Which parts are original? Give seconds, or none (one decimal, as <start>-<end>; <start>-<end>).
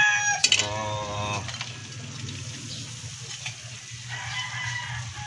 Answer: 0.0-5.3